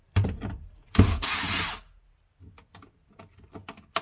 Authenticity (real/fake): real